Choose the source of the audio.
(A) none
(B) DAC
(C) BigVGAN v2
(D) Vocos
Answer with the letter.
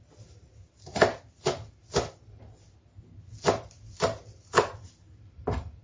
C